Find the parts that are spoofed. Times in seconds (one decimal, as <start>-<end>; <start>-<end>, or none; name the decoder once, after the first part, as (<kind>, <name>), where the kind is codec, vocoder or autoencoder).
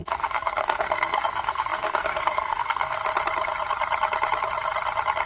0.0-3.0 (codec, SNAC)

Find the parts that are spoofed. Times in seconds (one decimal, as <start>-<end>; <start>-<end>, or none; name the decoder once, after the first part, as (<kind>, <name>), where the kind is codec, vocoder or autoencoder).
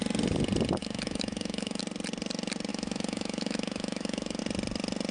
0.8-1.8 (autoencoder, DAC-VAE); 2.7-4.4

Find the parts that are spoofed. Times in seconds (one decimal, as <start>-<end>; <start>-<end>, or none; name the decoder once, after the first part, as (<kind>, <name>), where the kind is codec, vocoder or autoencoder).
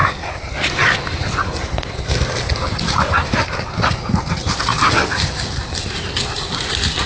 none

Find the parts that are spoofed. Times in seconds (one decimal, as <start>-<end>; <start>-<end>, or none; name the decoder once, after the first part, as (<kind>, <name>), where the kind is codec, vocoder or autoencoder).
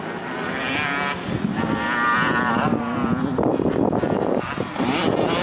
none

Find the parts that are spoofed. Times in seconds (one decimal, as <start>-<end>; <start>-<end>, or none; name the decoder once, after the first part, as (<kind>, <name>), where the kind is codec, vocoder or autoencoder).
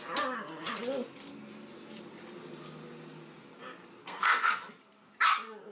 4.0-4.5 (codec, SNAC)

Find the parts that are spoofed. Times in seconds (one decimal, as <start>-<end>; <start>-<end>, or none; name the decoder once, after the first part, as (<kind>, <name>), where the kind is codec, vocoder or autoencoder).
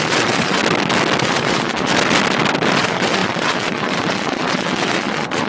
0.0-0.6 (vocoder, Vocos); 1.2-1.9; 2.8-5.5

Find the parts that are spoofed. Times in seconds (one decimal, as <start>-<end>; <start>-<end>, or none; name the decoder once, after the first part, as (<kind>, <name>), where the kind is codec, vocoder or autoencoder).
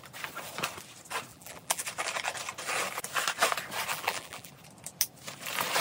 1.3-1.8 (vocoder, BigVGAN v2); 3.9-4.5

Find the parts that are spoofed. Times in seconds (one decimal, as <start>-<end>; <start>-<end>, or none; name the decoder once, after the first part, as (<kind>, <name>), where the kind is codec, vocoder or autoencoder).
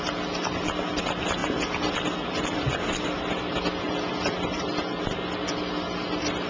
none